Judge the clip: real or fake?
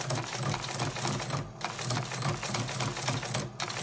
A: real